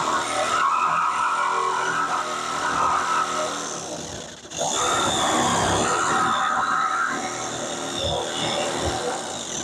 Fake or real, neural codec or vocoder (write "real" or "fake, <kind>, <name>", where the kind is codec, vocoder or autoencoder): real